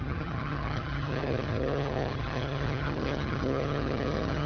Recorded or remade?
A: remade